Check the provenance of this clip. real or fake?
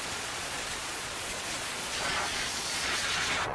fake